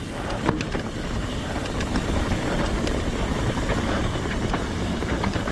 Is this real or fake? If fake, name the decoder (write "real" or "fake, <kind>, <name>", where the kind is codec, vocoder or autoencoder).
real